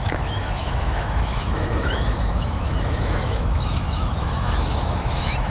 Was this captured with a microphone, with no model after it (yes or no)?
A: no